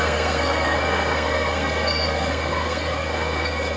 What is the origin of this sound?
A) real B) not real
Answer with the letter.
B